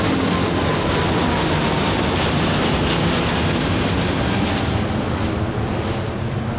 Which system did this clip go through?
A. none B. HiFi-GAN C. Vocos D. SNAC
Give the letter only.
A